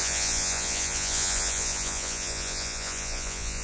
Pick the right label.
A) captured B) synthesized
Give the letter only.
B